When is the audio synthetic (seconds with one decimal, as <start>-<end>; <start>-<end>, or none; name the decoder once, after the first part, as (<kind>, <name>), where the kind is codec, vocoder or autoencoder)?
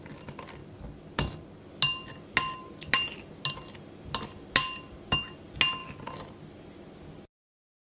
5.8-6.6 (vocoder, BigVGAN v2)